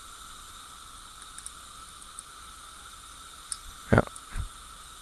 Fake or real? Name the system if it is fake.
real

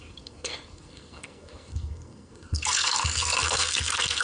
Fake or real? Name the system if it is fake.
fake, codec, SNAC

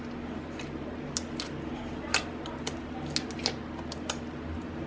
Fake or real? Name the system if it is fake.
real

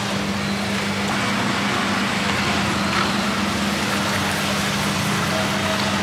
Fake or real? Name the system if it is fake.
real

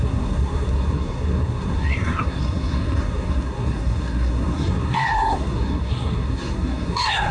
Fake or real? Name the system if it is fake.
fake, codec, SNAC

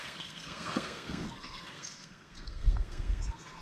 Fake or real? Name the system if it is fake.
fake, codec, SNAC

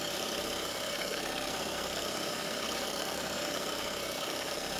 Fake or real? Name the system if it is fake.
fake, codec, SNAC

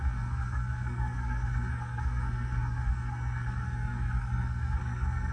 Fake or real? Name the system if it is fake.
fake, codec, SNAC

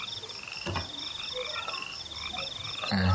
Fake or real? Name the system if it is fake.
real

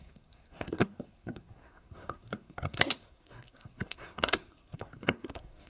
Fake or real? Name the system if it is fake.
fake, codec, SNAC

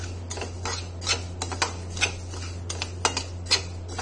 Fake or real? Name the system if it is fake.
real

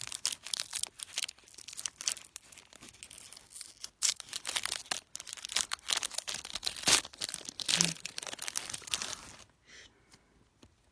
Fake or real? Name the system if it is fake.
real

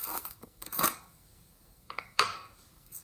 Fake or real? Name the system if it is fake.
fake, codec, SNAC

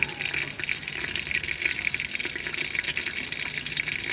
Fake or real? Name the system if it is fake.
real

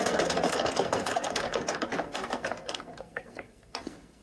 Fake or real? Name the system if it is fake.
fake, codec, SNAC